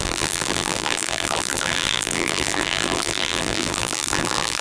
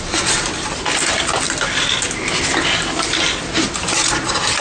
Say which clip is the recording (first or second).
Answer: second